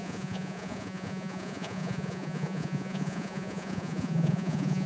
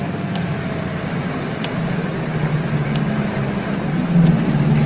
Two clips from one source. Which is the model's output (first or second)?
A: first